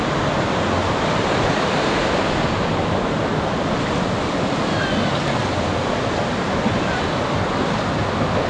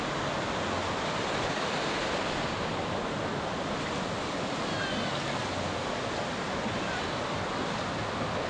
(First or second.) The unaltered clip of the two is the second